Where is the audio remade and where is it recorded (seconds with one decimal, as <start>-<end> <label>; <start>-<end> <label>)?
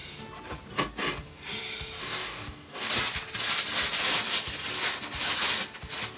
0.0-2.0 recorded; 2.0-2.9 remade; 2.9-6.2 recorded